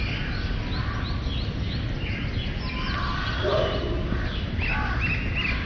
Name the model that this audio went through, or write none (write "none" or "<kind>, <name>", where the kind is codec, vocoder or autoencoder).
none